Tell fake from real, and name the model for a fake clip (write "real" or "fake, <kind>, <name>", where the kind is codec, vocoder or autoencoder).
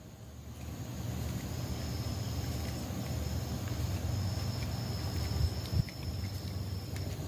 real